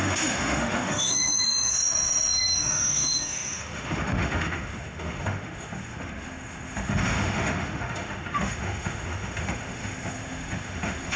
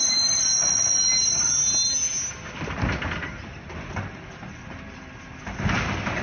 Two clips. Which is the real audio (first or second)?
second